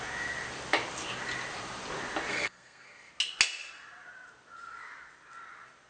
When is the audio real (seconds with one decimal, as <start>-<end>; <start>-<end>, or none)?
0.0-2.3; 3.1-5.9